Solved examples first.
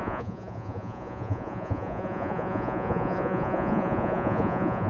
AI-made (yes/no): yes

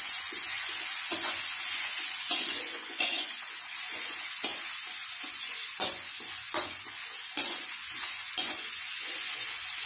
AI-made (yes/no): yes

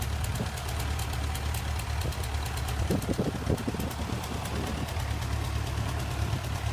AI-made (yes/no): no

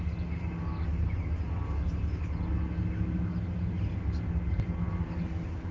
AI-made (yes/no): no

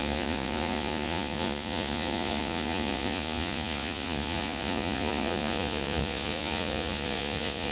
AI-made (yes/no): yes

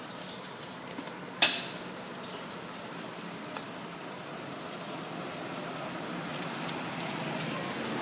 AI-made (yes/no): no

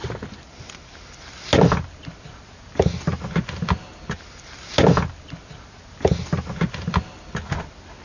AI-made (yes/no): no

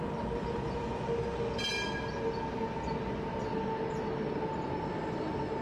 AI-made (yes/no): no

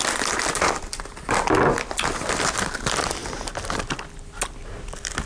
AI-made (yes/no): no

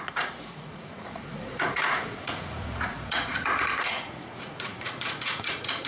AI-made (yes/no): yes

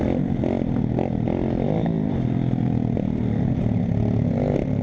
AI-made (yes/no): no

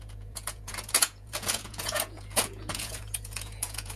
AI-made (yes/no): yes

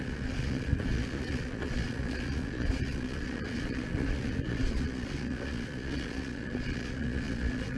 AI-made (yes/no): yes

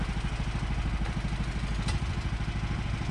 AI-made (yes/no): no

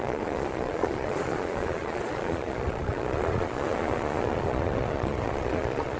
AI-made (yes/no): yes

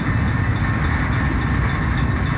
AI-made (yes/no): no